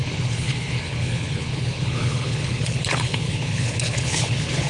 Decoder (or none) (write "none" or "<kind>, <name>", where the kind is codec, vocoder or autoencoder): codec, HILCodec